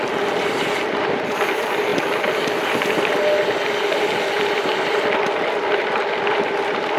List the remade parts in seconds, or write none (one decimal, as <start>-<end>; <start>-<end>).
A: none